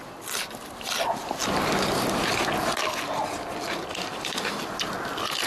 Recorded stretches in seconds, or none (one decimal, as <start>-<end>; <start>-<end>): 0.0-5.5